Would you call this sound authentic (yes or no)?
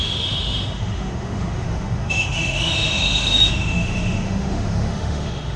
no